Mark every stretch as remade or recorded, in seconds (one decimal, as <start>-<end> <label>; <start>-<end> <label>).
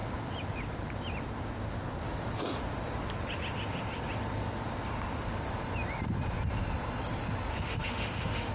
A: 0.0-7.5 recorded; 7.5-8.5 remade